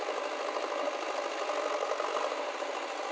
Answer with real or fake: real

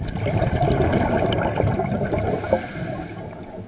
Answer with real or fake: real